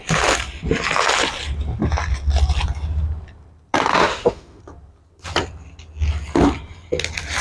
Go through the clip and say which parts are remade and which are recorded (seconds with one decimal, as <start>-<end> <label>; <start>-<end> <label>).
0.0-3.9 recorded; 3.9-4.6 remade; 4.6-7.4 recorded